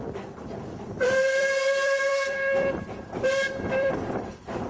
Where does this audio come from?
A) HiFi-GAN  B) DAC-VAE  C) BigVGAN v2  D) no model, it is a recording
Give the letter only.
C